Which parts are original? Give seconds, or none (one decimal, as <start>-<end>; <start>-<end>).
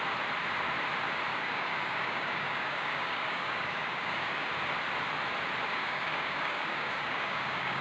0.0-1.3; 4.5-5.7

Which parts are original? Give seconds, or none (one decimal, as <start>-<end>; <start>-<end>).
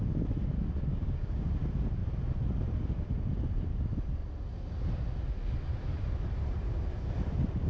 0.0-0.9; 1.5-7.7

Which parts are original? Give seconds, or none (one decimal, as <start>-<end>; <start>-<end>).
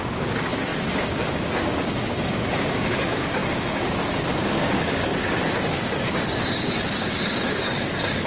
5.1-6.4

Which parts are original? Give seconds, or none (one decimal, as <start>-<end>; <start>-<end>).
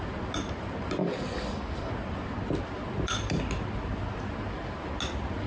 0.0-1.0; 1.9-5.5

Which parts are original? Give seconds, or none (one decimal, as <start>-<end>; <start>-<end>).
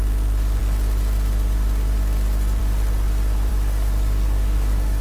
0.0-3.5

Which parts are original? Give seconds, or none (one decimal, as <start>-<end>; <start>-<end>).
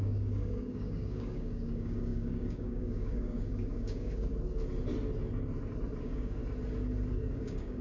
4.3-6.0; 6.4-7.3